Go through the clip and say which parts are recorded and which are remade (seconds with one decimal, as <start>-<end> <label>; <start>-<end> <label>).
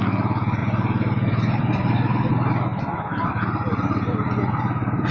0.0-0.6 recorded; 0.6-2.3 remade; 2.3-2.7 recorded; 2.7-4.5 remade; 4.5-5.1 recorded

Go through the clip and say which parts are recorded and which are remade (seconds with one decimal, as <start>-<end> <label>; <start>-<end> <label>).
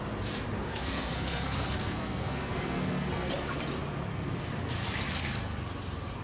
0.0-0.7 recorded; 0.7-3.3 remade; 3.3-6.2 recorded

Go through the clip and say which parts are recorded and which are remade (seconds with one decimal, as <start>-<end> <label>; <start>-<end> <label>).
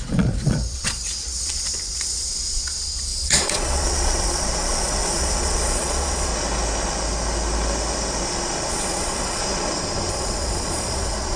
0.0-6.3 remade; 6.3-8.7 recorded; 8.7-9.4 remade; 9.4-10.1 recorded; 10.1-11.4 remade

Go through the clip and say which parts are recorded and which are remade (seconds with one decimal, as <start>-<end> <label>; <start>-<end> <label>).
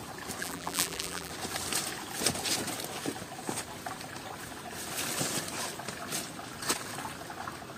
0.0-0.4 recorded; 0.4-1.3 remade; 1.3-7.8 recorded